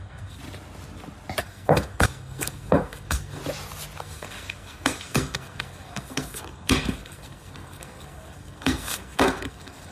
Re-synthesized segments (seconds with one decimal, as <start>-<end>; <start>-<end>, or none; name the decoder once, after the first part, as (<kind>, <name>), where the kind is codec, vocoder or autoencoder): 0.0-0.4 (codec, SNAC); 1.4-3.4; 4.0-9.9